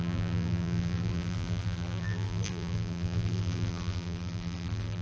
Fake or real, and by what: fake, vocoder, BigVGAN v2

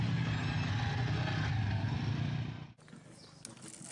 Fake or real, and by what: real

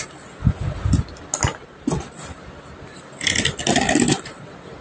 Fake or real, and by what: real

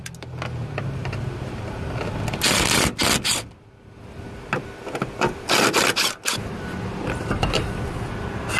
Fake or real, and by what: real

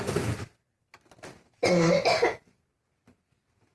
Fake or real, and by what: real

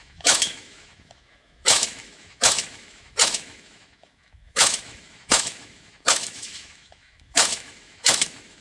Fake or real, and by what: fake, autoencoder, DAC-VAE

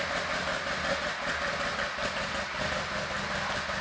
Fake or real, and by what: real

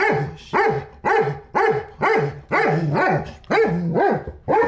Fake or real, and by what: real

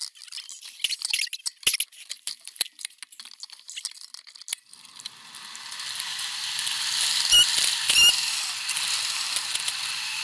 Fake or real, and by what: real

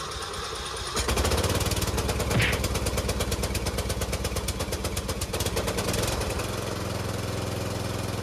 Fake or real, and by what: real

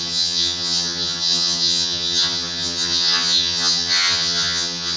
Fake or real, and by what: fake, vocoder, HiFi-GAN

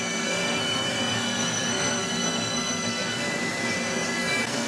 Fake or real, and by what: fake, codec, SNAC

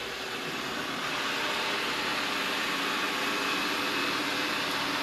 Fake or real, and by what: real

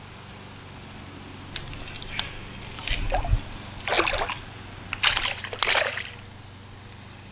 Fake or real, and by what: real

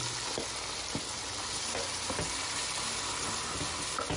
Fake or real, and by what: real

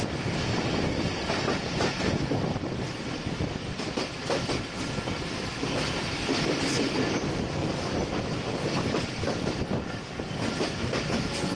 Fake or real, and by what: real